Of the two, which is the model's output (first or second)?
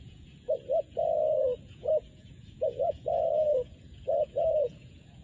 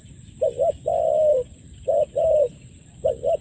first